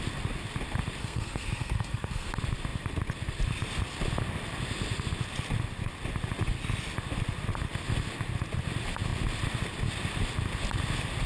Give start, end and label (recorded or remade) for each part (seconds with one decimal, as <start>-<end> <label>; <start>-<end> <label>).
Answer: 0.0-1.0 recorded; 1.0-2.3 remade; 2.3-11.3 recorded